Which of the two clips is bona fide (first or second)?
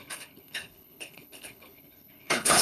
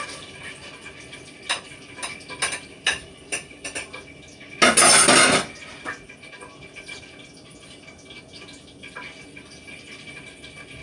second